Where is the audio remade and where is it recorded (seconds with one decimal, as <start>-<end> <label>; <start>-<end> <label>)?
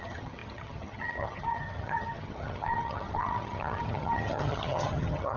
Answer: 0.0-5.4 remade